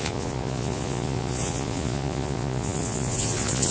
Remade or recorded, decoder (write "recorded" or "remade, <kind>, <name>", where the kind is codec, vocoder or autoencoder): remade, vocoder, Vocos